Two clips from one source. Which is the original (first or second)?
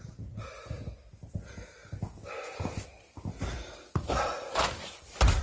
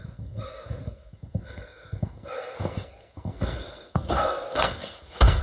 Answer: first